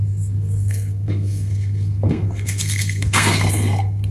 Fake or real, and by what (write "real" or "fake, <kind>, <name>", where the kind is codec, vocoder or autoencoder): fake, codec, SNAC